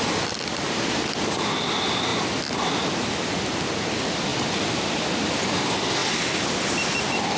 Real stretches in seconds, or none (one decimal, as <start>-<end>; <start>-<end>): 0.0-7.4